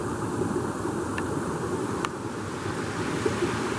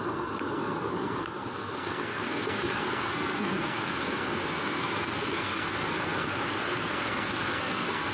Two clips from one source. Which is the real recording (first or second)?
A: first